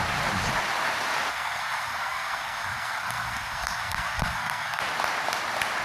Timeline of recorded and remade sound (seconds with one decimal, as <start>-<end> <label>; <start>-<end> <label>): 0.0-1.3 recorded; 1.3-4.8 remade; 4.8-5.8 recorded